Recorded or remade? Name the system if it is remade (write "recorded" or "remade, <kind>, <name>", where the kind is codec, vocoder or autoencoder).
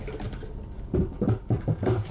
recorded